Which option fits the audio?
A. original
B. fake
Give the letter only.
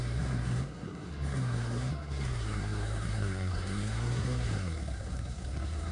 B